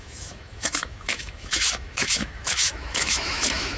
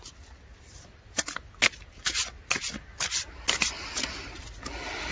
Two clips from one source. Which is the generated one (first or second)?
first